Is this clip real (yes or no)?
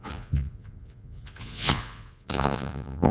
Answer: no